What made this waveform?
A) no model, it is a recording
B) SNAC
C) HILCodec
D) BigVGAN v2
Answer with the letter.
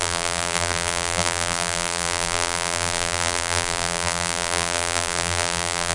D